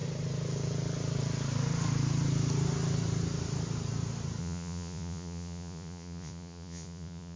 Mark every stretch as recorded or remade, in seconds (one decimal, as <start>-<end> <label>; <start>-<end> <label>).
0.0-4.4 recorded; 4.4-7.4 remade